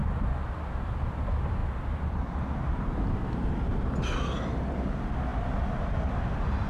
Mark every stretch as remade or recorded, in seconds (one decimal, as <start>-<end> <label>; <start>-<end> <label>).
0.0-6.7 recorded